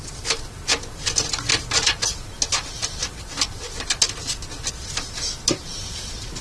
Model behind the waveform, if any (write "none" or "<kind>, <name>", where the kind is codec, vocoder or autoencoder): none